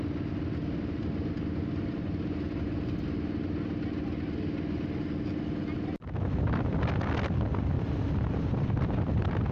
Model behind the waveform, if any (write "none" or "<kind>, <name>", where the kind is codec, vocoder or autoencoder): none